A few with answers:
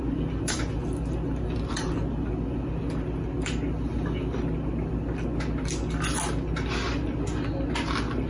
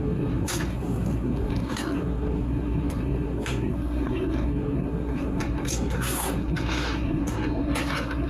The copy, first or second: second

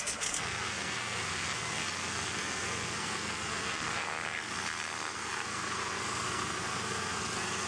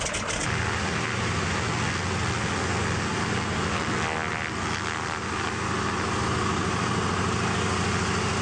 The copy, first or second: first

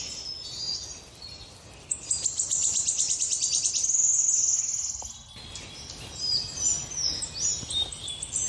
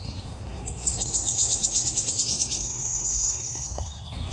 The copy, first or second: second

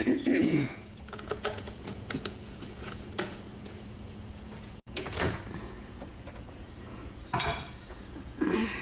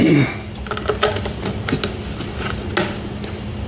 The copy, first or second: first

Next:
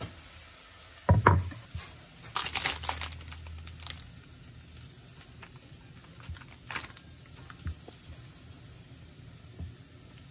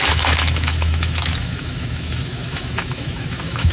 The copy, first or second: second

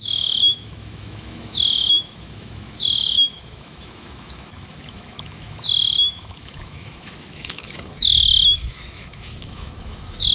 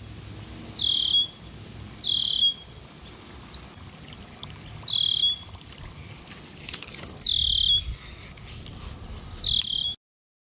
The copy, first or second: first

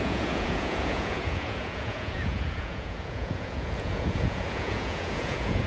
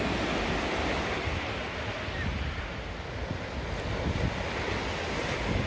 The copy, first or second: first